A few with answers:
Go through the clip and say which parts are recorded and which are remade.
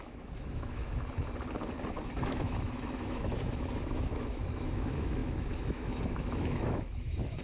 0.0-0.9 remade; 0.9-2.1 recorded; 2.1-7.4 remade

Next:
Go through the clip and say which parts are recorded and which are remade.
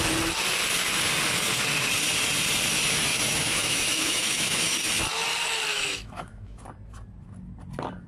0.0-3.1 recorded; 3.1-4.9 remade; 4.9-5.7 recorded; 5.7-6.6 remade; 6.6-8.1 recorded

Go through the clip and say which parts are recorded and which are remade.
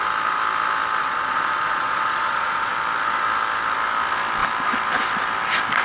0.0-1.0 recorded; 1.0-2.7 remade; 2.7-5.8 recorded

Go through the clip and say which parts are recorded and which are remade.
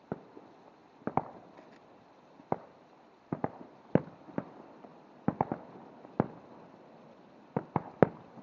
0.0-8.4 recorded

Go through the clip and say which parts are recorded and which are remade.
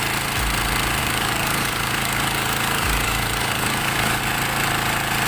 0.0-1.0 recorded; 1.0-4.2 remade; 4.2-5.3 recorded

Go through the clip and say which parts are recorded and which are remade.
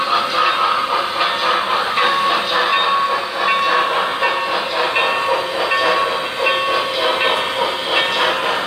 0.0-1.8 recorded; 1.8-2.3 remade; 2.3-8.7 recorded